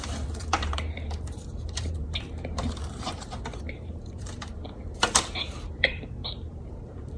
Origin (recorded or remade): remade